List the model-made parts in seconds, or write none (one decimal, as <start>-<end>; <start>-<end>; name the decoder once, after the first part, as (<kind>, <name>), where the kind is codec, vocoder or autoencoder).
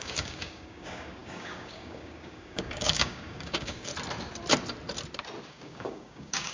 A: 0.0-3.9 (codec, DAC); 5.5-6.5